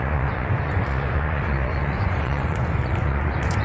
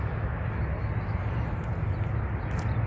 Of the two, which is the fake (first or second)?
first